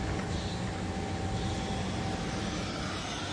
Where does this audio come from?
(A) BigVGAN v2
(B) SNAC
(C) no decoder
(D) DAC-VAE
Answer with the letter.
C